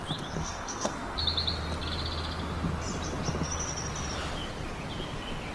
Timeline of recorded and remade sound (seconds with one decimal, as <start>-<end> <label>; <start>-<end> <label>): 0.0-0.4 recorded; 0.4-1.2 remade; 1.2-5.5 recorded